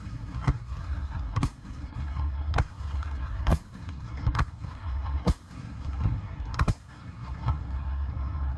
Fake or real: fake